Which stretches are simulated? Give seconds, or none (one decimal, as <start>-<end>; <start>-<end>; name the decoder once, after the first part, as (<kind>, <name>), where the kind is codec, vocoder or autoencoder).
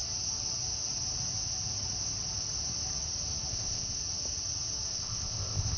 3.5-4.0 (codec, ZipCodec); 4.9-5.8